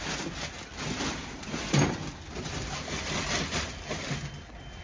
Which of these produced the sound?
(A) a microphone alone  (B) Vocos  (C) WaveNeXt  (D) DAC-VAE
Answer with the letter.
A